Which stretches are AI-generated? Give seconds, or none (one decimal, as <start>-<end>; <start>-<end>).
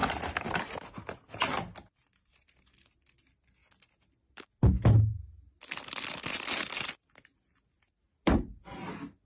none